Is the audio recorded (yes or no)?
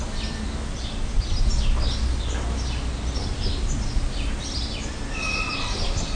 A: yes